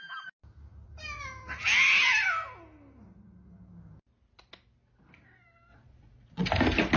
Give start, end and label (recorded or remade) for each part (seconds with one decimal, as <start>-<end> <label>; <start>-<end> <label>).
0.0-5.7 recorded; 5.7-6.4 remade; 6.4-7.0 recorded